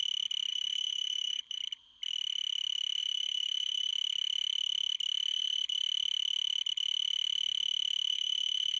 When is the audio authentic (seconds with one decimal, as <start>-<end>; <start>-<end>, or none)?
0.0-0.5; 1.6-3.0; 3.9-5.3; 5.8-8.1

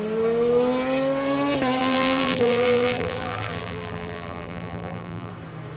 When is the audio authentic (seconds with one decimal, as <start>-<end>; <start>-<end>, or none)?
0.0-1.8; 5.3-5.8

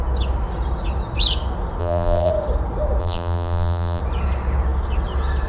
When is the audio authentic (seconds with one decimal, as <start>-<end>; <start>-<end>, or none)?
0.0-1.8; 2.3-3.0; 4.0-5.5

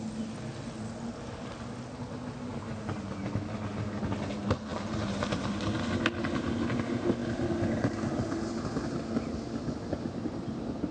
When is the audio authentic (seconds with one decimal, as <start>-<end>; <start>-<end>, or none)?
0.0-4.7; 5.6-10.9

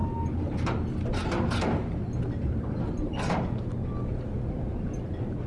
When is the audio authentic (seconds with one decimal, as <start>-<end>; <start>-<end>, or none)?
0.0-5.5

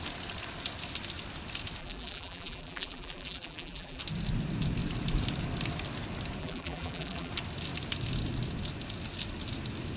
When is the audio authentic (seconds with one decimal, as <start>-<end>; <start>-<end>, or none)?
0.0-1.8; 4.0-6.4; 7.3-10.0

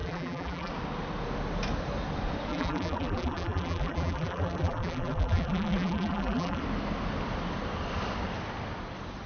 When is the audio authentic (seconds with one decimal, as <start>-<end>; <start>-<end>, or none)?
0.7-2.5; 6.6-9.3

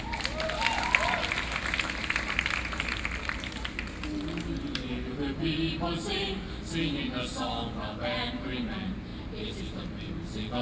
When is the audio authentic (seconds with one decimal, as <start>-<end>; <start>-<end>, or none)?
0.0-9.1; 10.1-10.6